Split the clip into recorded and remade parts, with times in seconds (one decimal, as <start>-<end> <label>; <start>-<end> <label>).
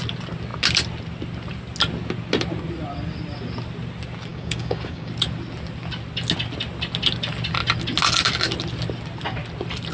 0.0-4.3 recorded; 4.3-5.1 remade; 5.1-9.9 recorded